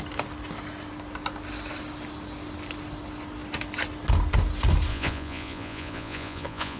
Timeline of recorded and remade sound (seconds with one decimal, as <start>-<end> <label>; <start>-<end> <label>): 0.0-4.9 recorded; 4.9-6.8 remade